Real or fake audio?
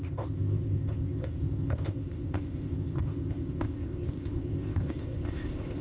fake